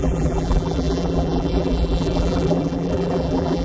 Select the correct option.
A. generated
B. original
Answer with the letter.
A